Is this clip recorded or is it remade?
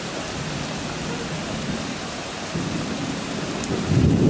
recorded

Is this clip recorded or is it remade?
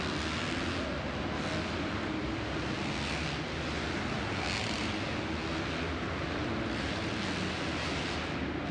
recorded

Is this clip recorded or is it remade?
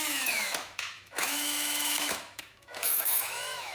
remade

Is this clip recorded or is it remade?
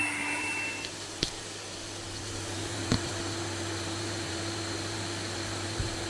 remade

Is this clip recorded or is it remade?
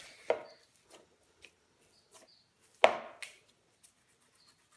recorded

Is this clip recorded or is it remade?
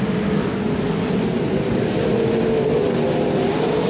recorded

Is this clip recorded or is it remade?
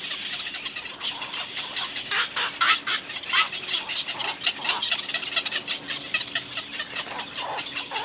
recorded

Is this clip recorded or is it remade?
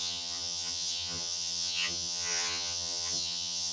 remade